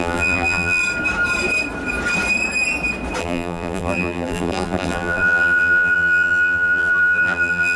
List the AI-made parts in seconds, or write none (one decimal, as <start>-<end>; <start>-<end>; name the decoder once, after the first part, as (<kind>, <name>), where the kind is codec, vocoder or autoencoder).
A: 0.0-0.8 (vocoder, BigVGAN v2); 3.2-7.8